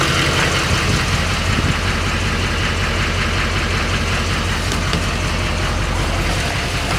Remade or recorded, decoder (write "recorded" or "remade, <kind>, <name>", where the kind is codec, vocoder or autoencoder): recorded